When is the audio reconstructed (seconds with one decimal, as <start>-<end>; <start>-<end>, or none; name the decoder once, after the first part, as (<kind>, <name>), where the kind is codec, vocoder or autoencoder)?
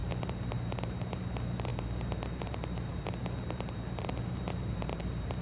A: 0.0-5.4 (vocoder, BigVGAN v2)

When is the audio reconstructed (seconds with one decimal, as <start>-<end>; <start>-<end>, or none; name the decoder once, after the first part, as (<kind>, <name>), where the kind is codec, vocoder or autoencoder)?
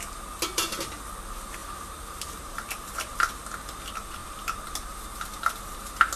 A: 1.6-3.3 (vocoder, BigVGAN v2)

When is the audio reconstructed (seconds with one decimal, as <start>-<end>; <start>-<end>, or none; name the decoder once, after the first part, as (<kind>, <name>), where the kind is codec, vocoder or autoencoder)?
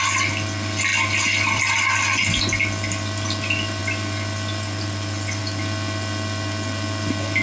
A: none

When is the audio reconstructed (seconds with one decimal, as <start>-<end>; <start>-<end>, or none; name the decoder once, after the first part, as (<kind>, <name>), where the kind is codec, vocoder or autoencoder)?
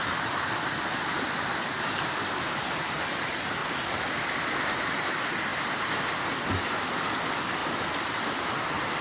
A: none